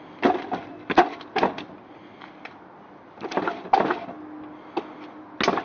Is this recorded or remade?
recorded